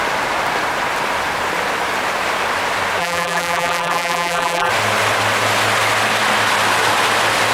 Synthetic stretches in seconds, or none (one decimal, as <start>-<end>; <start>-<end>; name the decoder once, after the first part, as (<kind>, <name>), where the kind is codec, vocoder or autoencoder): 3.0-4.7 (vocoder, BigVGAN v2)